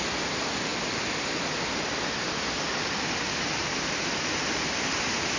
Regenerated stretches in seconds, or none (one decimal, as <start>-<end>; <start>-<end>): none